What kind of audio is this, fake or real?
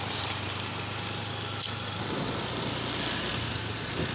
real